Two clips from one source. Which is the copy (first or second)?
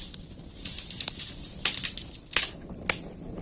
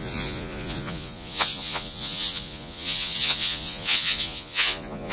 second